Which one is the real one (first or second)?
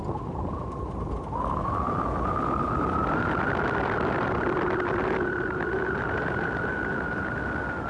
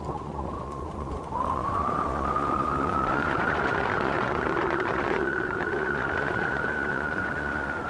first